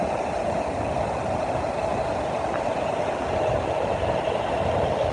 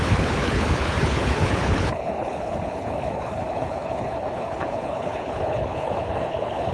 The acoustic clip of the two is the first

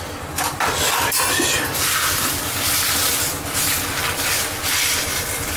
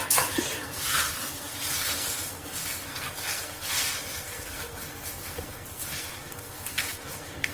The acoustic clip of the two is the first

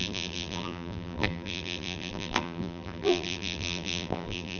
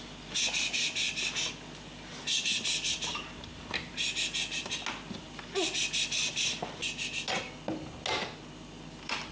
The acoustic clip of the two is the second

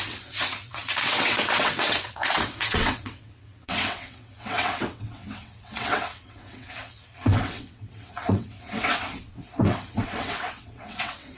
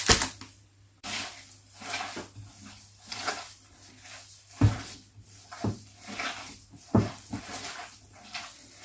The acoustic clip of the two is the second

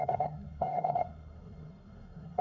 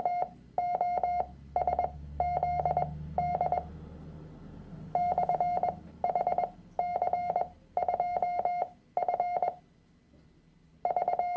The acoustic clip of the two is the second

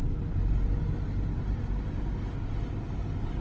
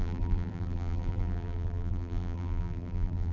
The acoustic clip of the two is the first